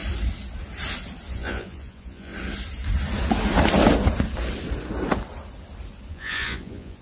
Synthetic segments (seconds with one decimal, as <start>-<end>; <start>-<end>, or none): 1.3-2.3; 6.1-7.0